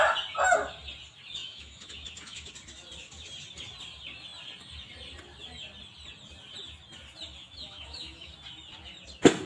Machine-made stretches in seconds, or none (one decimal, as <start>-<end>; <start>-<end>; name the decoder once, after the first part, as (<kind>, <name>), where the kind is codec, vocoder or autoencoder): 1.4-2.5 (autoencoder, DAC-VAE); 7.4-8.3